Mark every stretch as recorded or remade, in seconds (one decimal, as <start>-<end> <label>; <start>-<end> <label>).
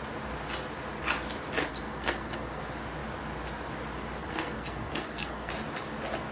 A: 0.0-1.7 recorded; 1.7-2.6 remade; 2.6-4.2 recorded; 4.2-5.5 remade; 5.5-6.3 recorded